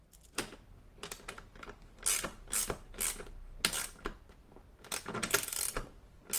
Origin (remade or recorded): recorded